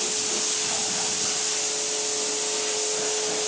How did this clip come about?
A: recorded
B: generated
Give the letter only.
A